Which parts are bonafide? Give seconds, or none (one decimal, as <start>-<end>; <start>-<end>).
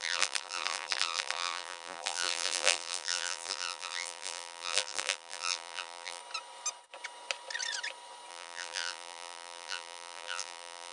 6.2-8.3